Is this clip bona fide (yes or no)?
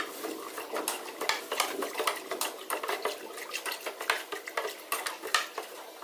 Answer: yes